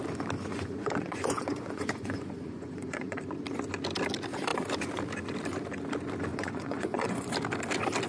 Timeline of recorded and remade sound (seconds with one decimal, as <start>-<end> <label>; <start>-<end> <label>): 0.0-0.5 recorded; 0.5-3.2 remade; 3.2-6.3 recorded; 6.3-7.3 remade; 7.3-8.1 recorded